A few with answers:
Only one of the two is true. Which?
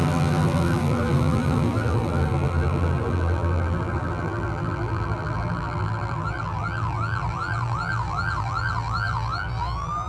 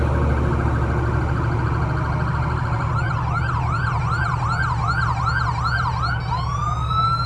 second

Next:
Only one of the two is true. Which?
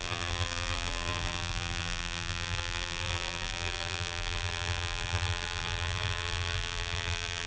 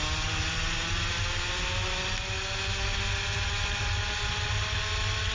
second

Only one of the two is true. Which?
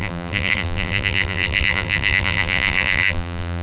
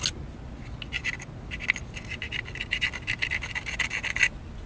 second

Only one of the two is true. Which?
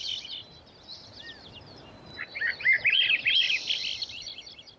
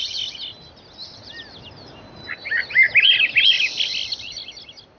second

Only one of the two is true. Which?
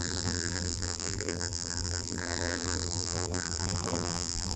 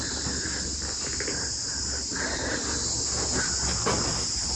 second